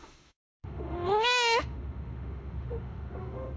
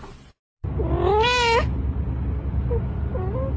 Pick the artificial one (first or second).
first